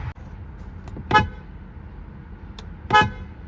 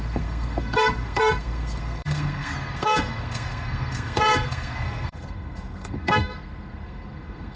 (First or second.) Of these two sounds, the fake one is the second